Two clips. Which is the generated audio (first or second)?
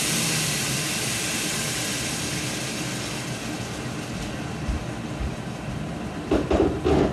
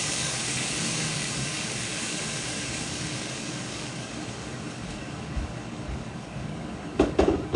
second